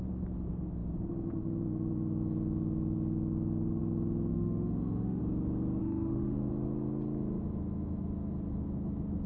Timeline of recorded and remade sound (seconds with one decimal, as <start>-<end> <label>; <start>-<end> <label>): 0.0-4.3 recorded; 4.3-5.2 remade; 5.2-5.8 recorded; 5.8-6.5 remade; 6.5-9.3 recorded